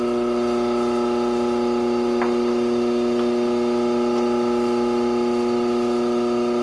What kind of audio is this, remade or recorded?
recorded